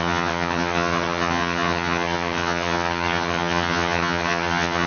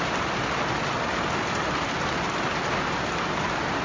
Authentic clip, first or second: second